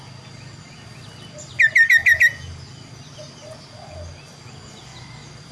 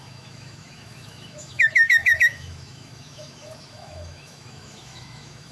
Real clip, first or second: first